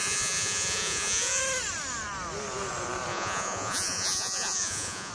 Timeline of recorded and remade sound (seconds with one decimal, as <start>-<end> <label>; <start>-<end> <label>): 0.0-1.4 remade; 1.4-3.1 recorded; 3.1-5.1 remade

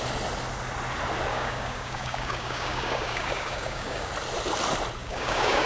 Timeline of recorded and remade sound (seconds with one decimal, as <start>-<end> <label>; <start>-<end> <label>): 0.0-1.3 recorded; 1.3-4.1 remade; 4.1-5.0 recorded; 5.0-5.7 remade

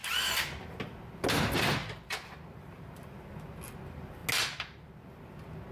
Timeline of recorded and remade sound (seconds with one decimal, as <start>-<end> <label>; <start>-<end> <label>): 0.0-1.8 recorded; 1.8-3.3 remade; 3.3-5.7 recorded